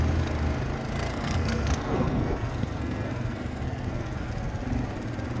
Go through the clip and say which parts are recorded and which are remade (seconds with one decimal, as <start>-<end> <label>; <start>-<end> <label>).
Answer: 0.0-1.1 recorded; 1.1-4.3 remade; 4.3-5.4 recorded